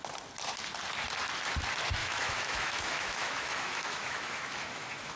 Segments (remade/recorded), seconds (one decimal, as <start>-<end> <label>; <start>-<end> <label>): 0.0-2.0 recorded; 2.0-5.2 remade